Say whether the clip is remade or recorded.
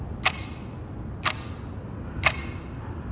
recorded